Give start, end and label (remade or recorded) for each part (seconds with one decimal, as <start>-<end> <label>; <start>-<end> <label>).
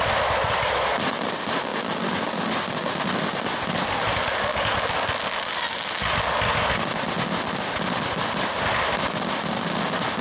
0.0-10.2 recorded